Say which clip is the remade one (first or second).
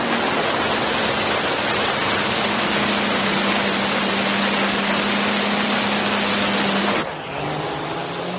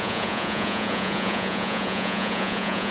second